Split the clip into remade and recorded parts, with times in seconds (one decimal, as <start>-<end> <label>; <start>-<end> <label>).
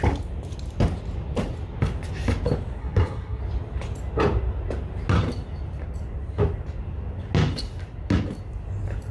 0.0-2.8 recorded; 2.8-3.4 remade; 3.4-9.1 recorded